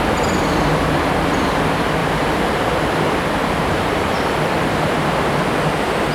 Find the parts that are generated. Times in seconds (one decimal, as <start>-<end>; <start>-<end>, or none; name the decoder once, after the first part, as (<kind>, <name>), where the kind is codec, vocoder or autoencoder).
2.0-2.9 (vocoder, BigVGAN v2); 3.4-5.5